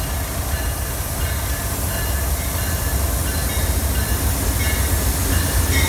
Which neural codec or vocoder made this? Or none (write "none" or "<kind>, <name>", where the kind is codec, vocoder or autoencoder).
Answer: none